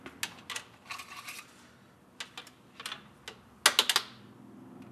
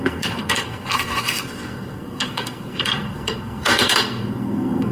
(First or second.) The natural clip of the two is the first